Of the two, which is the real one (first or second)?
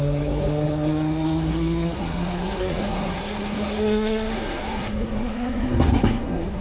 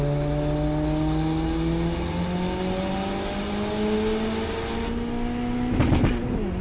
second